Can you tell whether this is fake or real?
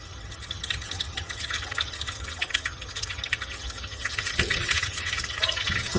fake